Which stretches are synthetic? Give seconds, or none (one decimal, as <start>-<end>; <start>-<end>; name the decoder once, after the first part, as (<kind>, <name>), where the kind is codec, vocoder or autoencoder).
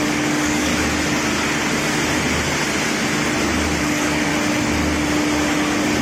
0.0-0.7 (codec, DAC); 3.8-4.3